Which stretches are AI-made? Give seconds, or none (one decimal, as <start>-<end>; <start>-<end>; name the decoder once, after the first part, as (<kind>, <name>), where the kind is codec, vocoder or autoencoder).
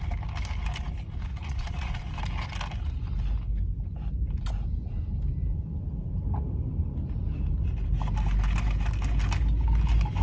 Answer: 1.3-2.0 (vocoder, Vocos)